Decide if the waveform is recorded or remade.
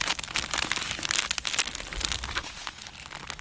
recorded